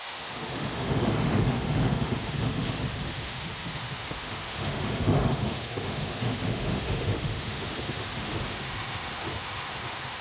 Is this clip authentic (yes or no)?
no